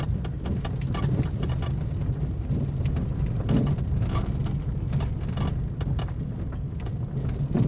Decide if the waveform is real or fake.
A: real